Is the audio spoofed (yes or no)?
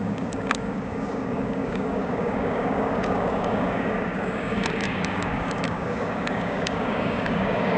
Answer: yes